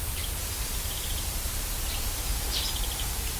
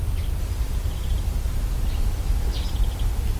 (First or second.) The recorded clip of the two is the second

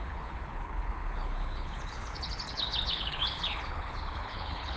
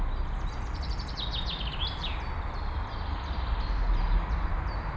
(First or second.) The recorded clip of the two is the second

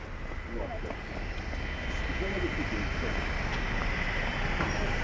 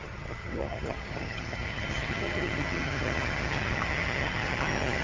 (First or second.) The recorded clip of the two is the first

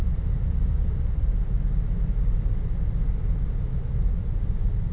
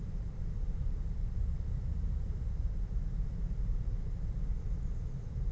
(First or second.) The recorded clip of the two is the first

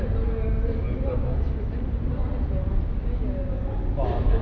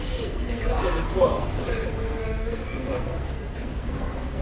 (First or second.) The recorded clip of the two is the first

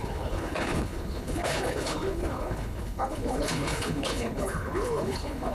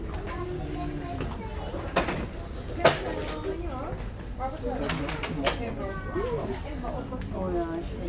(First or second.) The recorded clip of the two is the second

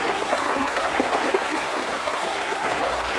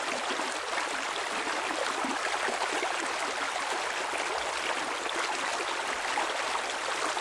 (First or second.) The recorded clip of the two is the second